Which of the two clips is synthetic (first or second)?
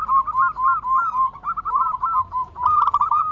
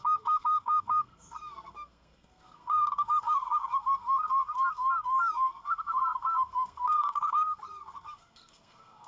second